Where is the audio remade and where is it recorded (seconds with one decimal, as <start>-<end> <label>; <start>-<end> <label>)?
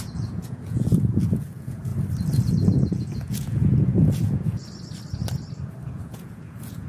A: 0.0-1.9 remade; 1.9-2.5 recorded; 2.5-4.6 remade; 4.6-5.9 recorded; 5.9-6.9 remade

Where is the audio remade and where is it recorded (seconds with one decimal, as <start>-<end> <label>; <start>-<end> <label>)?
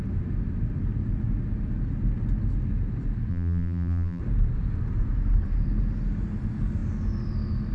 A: 0.0-3.3 recorded; 3.3-4.2 remade; 4.2-7.7 recorded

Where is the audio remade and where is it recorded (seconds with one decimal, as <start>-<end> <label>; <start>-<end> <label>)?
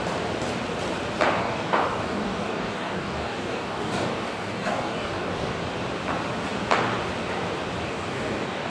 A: 0.0-1.4 recorded; 1.4-5.6 remade; 5.6-7.9 recorded; 7.9-8.7 remade